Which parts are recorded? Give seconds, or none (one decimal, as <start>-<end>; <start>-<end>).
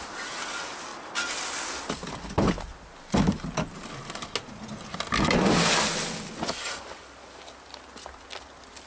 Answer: 0.0-8.9